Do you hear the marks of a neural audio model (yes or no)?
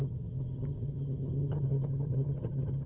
yes